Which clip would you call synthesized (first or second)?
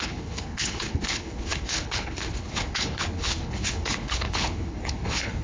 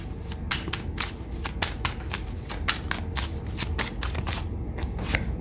first